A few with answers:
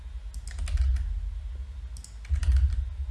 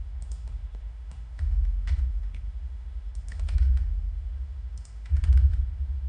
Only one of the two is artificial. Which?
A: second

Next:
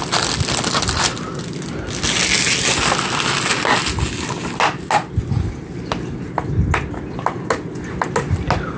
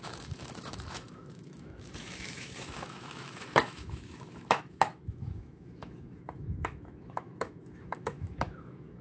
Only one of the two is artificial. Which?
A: second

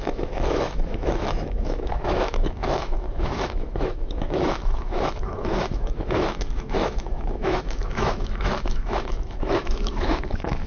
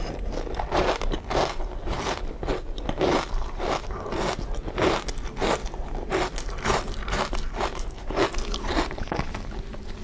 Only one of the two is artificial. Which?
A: first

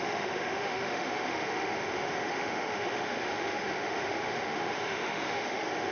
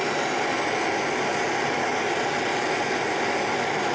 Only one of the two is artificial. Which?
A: first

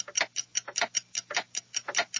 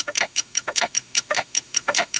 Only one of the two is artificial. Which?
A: second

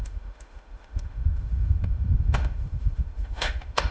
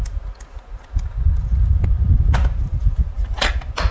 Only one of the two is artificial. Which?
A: first